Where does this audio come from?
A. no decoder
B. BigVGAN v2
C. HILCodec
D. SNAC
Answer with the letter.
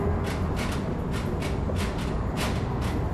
A